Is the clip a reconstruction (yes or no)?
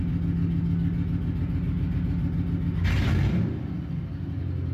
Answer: no